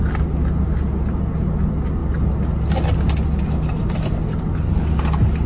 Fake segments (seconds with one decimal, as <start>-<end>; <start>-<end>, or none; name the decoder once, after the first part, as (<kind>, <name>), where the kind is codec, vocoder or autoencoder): none